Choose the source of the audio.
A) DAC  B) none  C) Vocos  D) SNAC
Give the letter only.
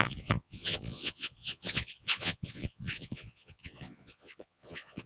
C